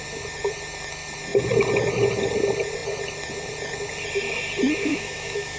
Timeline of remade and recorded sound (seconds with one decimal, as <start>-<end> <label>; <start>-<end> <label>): 0.0-4.8 recorded; 4.8-5.6 remade